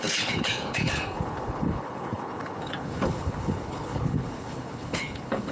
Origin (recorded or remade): remade